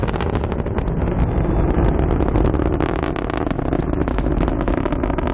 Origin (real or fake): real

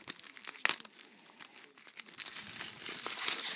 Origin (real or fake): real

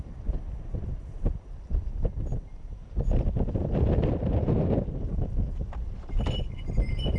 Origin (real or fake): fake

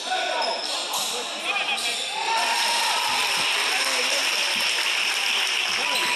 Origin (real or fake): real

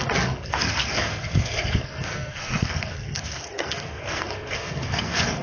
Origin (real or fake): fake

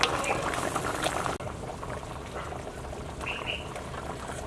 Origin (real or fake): real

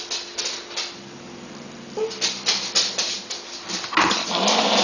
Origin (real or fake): real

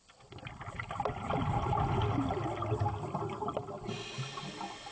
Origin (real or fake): real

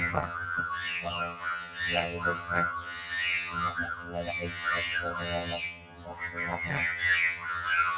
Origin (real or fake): fake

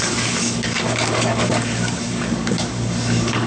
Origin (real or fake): fake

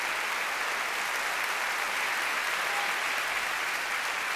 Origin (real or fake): real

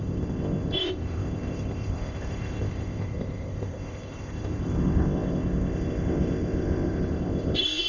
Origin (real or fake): fake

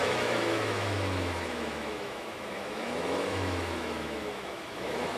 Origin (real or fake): fake